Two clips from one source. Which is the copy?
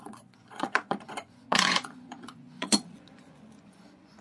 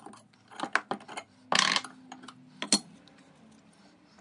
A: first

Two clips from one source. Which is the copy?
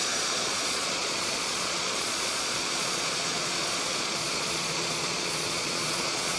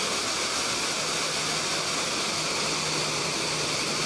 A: first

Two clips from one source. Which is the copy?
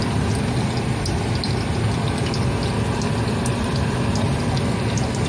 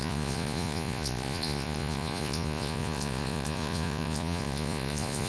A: second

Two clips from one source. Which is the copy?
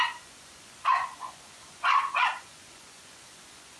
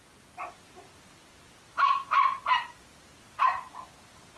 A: first